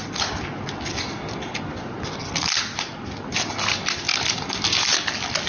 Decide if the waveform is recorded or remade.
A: recorded